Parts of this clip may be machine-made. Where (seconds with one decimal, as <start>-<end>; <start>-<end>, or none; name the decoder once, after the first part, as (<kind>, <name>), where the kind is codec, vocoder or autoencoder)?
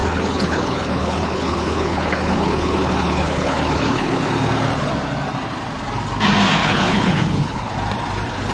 0.0-4.2 (codec, HILCodec); 6.6-7.7